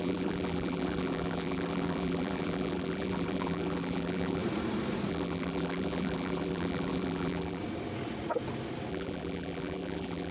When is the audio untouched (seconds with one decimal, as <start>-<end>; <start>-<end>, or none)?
4.4-5.1; 7.6-8.9